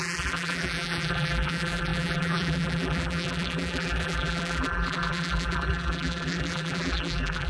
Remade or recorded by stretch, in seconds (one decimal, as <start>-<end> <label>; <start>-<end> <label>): 0.0-7.5 remade